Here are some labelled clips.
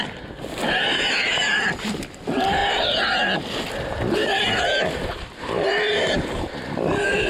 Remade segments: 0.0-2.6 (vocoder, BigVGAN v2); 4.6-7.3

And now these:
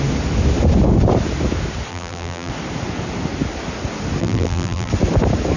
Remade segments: 1.9-2.5 (vocoder, BigVGAN v2); 4.2-4.9

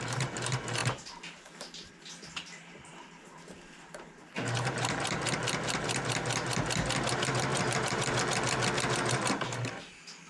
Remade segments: 0.8-1.9 (vocoder, BigVGAN v2); 7.5-8.2

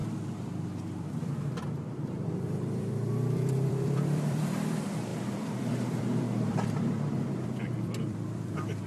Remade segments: 1.5-8.9 (vocoder, BigVGAN v2)